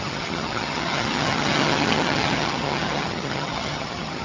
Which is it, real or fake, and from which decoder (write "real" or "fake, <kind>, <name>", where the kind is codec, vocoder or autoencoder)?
fake, vocoder, HiFi-GAN